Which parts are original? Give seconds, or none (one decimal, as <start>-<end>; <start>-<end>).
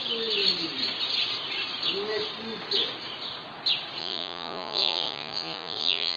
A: 0.0-4.0